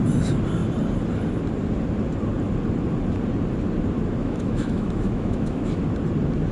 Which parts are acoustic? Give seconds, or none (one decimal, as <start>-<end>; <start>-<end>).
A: 0.0-4.2; 5.8-6.5